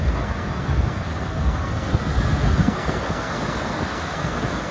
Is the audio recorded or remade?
remade